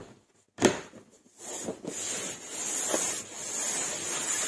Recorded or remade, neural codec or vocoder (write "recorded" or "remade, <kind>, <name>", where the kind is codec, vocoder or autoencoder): recorded